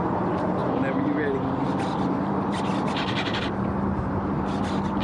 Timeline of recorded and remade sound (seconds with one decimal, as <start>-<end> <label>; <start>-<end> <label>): 0.0-0.6 recorded; 0.6-3.5 remade; 3.5-5.0 recorded